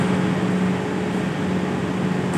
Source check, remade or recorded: recorded